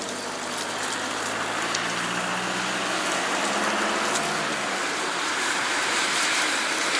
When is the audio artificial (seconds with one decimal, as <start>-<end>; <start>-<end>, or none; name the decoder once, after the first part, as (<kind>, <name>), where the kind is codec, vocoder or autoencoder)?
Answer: 4.8-6.6 (vocoder, BigVGAN v2)